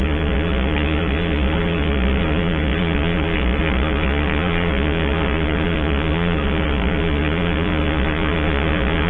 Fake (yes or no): yes